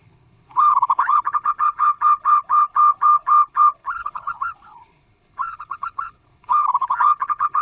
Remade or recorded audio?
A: remade